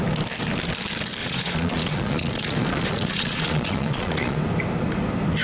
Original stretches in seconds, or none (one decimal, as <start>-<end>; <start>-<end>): 0.0-1.2; 4.4-5.4